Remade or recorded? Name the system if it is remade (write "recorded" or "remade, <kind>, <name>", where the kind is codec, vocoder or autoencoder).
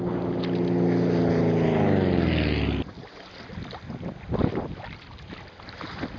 recorded